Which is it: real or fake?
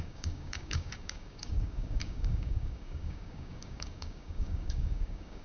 fake